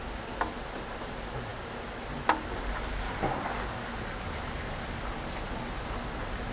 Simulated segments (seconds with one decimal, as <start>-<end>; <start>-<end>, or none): none